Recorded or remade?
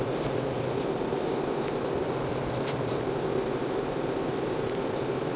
remade